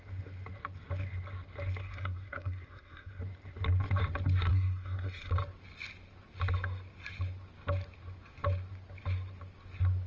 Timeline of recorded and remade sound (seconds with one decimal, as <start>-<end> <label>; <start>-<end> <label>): 0.0-1.8 recorded; 1.8-3.2 remade; 3.2-4.5 recorded; 4.5-5.3 remade; 5.3-10.1 recorded